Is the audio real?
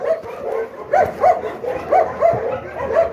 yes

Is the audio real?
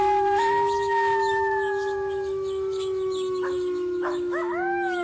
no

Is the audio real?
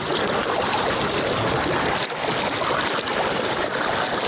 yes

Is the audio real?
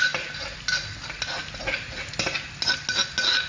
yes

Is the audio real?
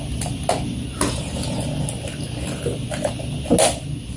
yes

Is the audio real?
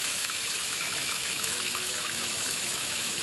no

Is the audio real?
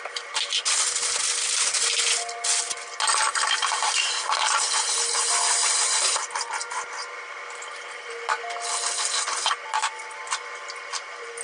yes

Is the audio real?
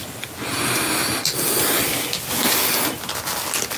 yes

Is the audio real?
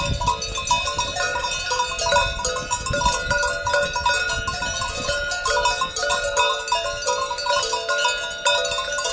yes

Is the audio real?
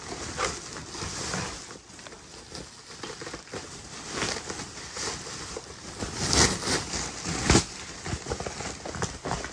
yes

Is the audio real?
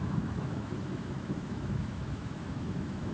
no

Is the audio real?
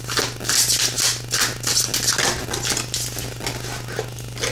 yes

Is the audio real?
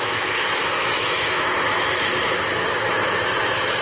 no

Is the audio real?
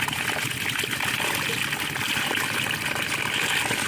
yes